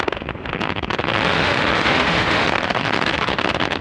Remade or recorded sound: remade